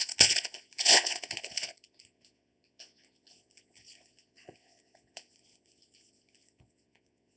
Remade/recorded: remade